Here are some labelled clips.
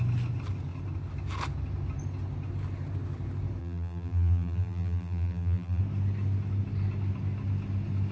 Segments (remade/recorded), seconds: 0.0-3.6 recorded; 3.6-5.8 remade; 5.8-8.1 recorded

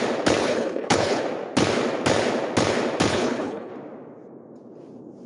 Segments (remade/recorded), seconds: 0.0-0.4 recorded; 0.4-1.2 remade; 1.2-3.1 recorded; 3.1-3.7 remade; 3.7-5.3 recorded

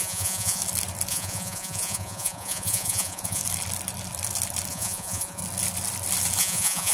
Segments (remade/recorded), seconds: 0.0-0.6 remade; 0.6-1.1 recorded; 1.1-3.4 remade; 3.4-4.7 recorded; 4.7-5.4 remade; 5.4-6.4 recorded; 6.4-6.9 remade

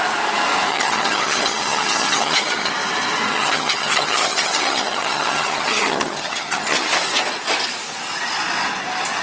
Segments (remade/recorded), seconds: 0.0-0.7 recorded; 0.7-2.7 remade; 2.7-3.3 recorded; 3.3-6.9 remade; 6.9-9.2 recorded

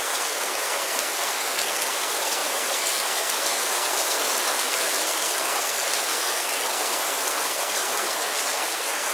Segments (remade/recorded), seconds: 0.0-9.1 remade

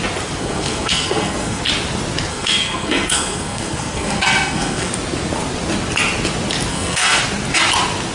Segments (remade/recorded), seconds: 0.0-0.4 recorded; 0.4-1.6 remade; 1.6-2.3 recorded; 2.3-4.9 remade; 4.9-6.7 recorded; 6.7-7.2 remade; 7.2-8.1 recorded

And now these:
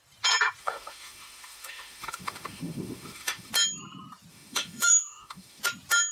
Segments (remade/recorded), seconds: 0.0-0.6 recorded; 0.6-3.5 remade; 3.5-4.3 recorded; 4.3-5.6 remade; 5.6-6.1 recorded